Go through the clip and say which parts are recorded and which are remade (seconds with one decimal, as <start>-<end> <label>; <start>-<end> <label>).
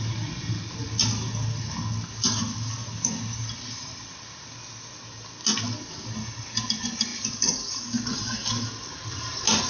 0.0-7.1 recorded; 7.1-7.7 remade; 7.7-9.7 recorded